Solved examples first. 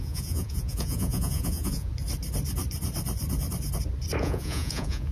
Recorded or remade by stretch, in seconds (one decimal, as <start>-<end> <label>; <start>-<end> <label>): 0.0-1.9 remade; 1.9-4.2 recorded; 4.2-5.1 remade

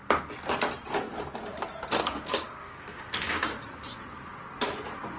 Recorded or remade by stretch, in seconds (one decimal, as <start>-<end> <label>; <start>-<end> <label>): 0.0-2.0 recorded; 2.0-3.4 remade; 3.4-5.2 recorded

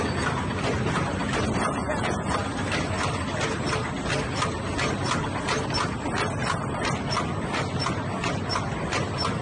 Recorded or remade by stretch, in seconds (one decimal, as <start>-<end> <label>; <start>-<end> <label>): 0.0-1.8 recorded; 1.8-2.3 remade; 2.3-9.4 recorded